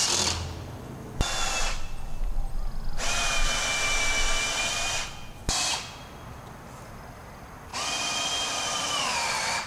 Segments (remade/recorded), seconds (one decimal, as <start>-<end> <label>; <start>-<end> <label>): 0.0-7.7 recorded; 7.7-9.7 remade